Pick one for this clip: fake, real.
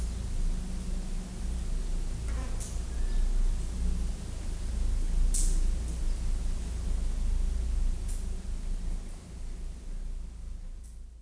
real